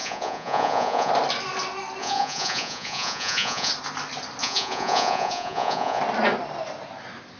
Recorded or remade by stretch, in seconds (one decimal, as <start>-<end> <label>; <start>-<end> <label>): 0.0-1.1 remade; 1.1-2.0 recorded; 2.0-3.7 remade; 3.7-4.4 recorded; 4.4-6.0 remade; 6.0-7.4 recorded